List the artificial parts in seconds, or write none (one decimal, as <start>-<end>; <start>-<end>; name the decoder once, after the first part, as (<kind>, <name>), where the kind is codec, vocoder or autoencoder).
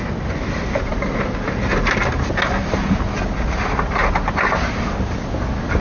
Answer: none